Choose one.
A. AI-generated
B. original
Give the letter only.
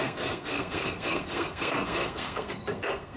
A